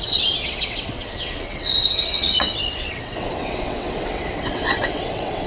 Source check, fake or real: fake